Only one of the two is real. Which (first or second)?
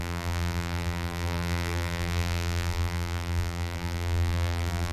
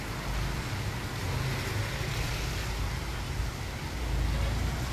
second